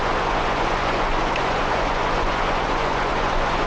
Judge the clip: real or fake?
fake